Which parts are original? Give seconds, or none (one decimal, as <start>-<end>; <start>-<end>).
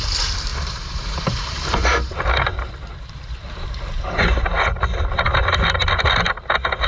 0.0-0.5; 4.6-6.9